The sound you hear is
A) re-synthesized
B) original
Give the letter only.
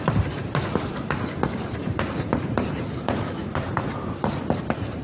A